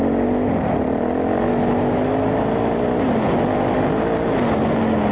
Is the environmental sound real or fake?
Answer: real